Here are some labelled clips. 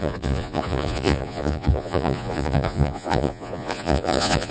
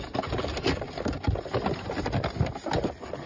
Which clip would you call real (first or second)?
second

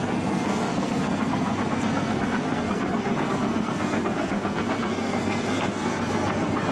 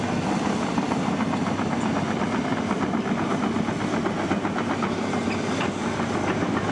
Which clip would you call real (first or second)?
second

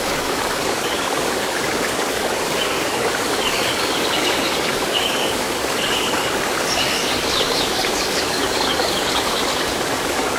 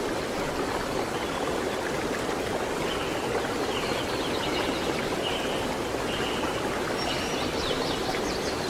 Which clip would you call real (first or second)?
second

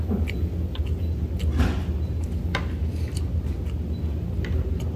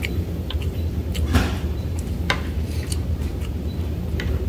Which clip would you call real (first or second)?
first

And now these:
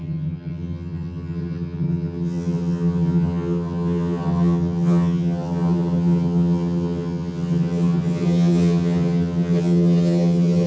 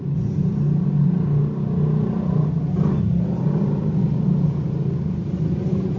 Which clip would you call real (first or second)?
second